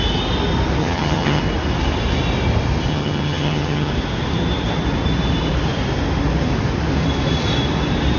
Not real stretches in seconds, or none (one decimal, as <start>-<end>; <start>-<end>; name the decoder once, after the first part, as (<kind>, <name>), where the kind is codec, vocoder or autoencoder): 0.8-1.4 (vocoder, HiFi-GAN); 2.9-3.9